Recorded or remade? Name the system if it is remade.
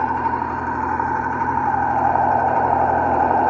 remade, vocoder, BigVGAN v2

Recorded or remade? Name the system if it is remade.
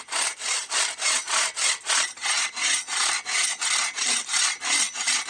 recorded